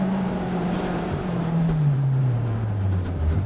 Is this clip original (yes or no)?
no